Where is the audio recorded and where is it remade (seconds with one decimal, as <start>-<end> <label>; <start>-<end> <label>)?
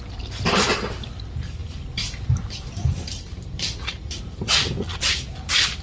0.0-1.6 recorded; 1.6-4.2 remade; 4.2-5.8 recorded